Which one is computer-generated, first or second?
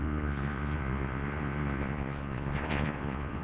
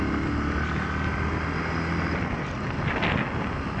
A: first